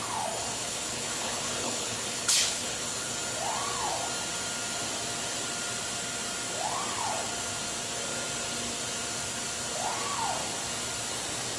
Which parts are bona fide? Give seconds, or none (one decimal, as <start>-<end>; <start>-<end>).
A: 0.0-0.6; 3.1-11.6

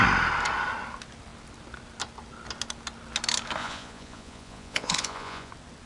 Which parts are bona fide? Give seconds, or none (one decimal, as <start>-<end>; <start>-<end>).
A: 0.0-3.6; 5.5-5.9

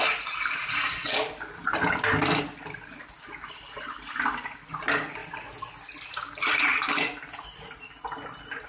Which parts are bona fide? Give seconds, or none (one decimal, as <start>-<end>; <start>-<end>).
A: 0.0-8.7

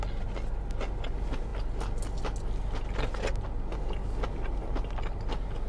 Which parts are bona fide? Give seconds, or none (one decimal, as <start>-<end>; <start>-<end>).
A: 0.0-5.7

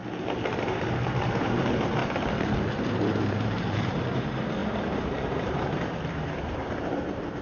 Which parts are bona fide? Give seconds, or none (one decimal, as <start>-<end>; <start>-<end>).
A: 0.0-0.6; 2.0-2.7